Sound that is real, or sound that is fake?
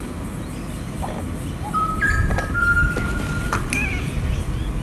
fake